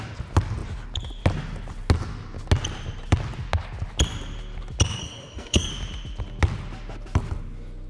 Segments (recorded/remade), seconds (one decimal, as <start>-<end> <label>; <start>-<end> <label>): 0.0-5.0 recorded; 5.0-5.7 remade; 5.7-7.9 recorded